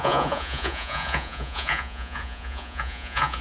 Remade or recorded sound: remade